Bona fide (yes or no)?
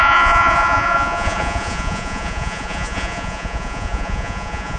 no